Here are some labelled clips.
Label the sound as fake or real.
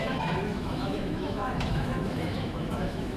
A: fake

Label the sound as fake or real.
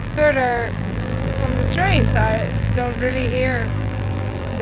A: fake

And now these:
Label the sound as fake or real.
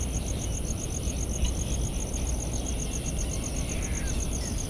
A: real